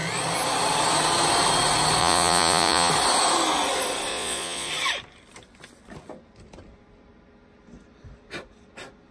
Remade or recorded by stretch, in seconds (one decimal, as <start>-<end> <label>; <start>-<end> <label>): 0.0-2.0 recorded; 2.0-2.9 remade; 2.9-4.1 recorded; 4.1-4.7 remade; 4.7-9.1 recorded